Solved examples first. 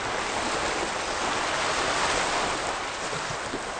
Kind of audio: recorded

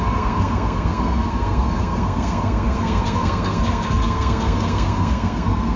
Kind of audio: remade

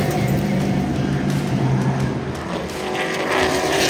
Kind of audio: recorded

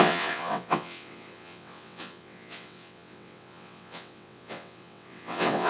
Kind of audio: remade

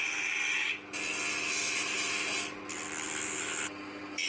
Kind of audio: recorded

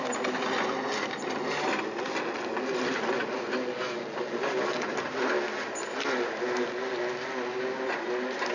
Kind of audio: recorded